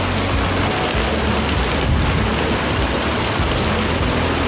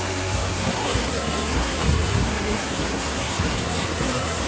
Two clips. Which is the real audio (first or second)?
first